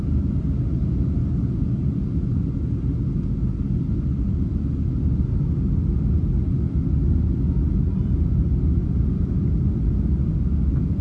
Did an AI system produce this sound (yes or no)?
no